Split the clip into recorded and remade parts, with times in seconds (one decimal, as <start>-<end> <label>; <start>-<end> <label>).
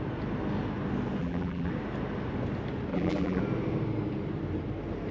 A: 0.0-1.2 recorded; 1.2-1.7 remade; 1.7-2.9 recorded; 2.9-3.4 remade; 3.4-5.1 recorded